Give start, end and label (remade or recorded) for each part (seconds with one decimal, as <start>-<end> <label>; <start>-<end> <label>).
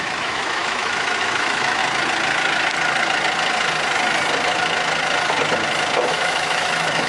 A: 0.0-1.8 remade; 1.8-6.1 recorded; 6.1-7.1 remade